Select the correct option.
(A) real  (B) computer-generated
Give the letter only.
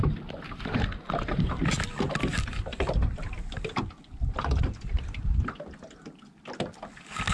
A